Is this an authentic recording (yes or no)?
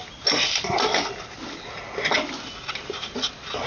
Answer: yes